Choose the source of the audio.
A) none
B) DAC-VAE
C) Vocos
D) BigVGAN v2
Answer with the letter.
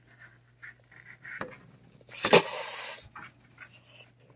A